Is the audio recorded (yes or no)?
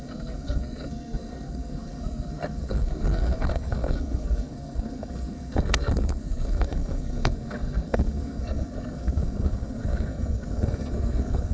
no